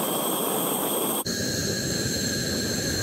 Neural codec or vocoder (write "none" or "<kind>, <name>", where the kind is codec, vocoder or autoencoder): vocoder, BigVGAN v2